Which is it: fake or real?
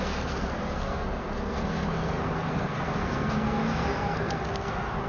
fake